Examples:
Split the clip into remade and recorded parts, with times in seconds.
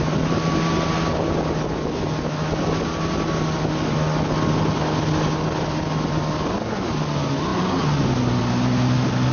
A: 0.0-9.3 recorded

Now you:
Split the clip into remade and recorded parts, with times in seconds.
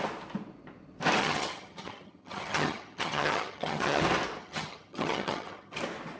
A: 0.0-1.2 recorded; 1.2-4.0 remade; 4.0-4.4 recorded; 4.4-5.8 remade; 5.8-6.2 recorded